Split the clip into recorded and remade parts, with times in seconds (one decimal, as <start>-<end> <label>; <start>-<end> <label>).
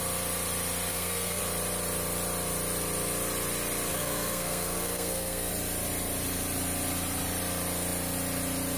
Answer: 0.0-0.9 recorded; 0.9-1.4 remade; 1.4-3.9 recorded; 3.9-5.5 remade; 5.5-8.8 recorded